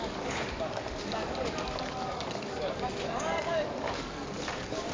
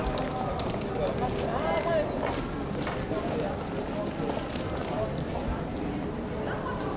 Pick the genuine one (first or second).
second